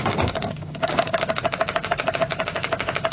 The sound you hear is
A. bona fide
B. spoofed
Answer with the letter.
B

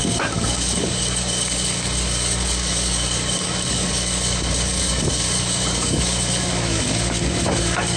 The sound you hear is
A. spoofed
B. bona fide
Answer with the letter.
A